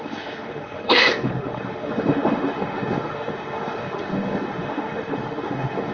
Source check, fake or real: fake